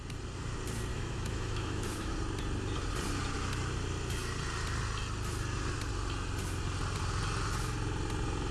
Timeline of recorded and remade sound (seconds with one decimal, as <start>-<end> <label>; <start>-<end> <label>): 0.0-0.9 recorded; 0.9-2.1 remade; 2.1-8.5 recorded